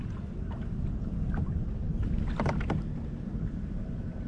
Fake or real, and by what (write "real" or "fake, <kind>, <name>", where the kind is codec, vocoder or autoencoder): real